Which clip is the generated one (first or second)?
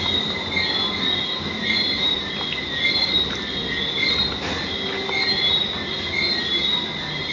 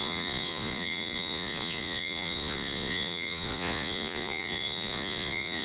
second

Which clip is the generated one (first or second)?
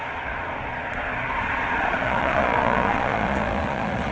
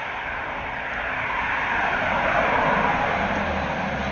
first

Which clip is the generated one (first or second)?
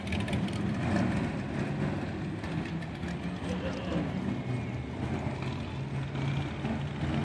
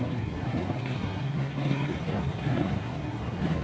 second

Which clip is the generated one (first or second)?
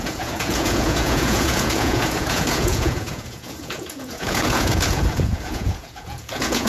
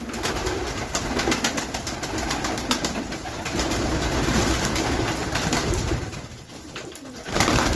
first